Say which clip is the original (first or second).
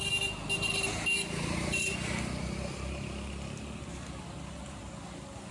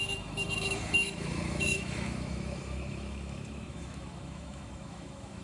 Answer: first